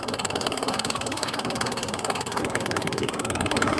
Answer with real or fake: fake